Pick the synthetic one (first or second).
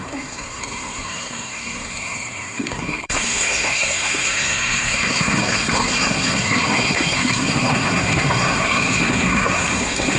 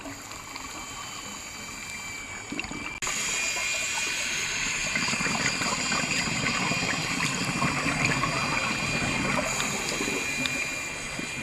first